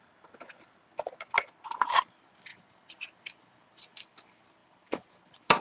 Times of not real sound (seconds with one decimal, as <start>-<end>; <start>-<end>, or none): 2.5-3.9